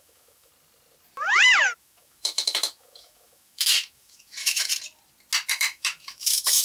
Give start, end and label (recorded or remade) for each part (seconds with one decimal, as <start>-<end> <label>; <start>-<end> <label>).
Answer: 0.0-0.5 remade; 0.5-1.8 recorded; 1.8-4.7 remade; 4.7-5.5 recorded; 5.5-6.6 remade